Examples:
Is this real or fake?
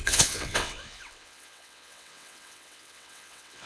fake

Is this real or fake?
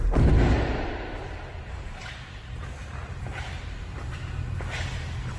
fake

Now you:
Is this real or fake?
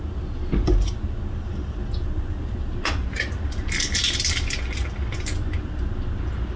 real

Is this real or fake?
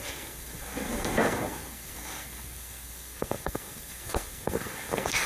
fake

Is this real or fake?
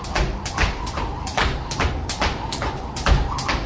real